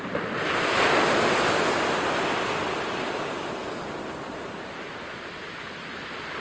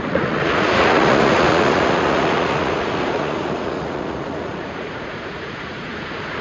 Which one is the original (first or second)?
first